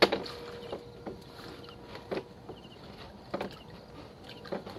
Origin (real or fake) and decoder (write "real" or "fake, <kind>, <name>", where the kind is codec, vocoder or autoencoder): real